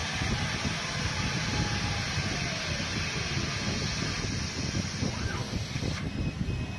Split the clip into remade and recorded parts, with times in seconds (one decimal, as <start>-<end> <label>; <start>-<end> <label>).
0.0-6.8 recorded